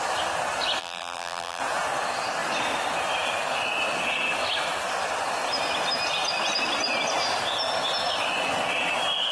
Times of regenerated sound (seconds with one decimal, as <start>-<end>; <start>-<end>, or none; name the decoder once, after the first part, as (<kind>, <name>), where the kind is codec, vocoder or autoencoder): 0.8-1.6 (vocoder, BigVGAN v2)